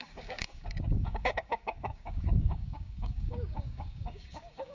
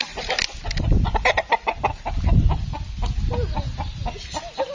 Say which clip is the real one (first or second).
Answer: second